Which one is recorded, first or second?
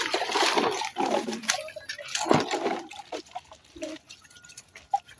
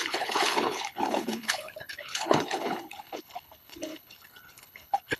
first